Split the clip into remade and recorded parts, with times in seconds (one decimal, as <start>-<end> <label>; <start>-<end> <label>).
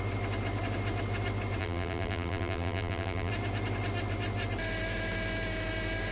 0.0-1.6 recorded; 1.6-3.3 remade; 3.3-6.1 recorded